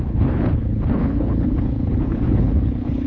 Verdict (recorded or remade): remade